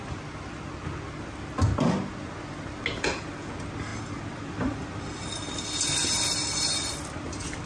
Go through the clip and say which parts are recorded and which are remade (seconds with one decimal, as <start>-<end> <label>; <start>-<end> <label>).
0.0-7.7 recorded